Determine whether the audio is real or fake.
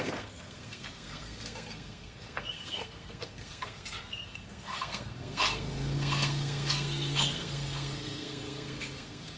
fake